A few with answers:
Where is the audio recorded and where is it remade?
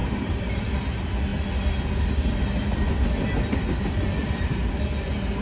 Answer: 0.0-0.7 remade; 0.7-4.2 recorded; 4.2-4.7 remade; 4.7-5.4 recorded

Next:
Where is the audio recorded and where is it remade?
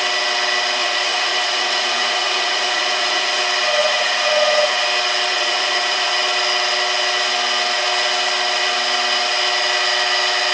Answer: 0.0-0.8 recorded; 0.8-3.4 remade; 3.4-3.8 recorded; 3.8-4.8 remade; 4.8-5.3 recorded; 5.3-6.1 remade; 6.1-10.5 recorded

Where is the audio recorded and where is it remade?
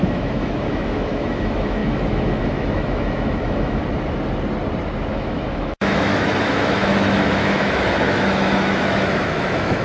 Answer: 0.0-3.8 remade; 3.8-5.1 recorded; 5.1-9.8 remade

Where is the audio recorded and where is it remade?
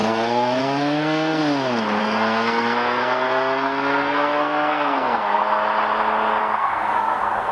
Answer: 0.0-1.4 remade; 1.4-2.0 recorded; 2.0-5.4 remade; 5.4-6.4 recorded; 6.4-7.5 remade